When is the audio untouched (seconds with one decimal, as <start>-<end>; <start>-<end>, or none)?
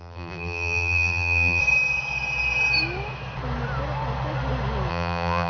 1.6-4.9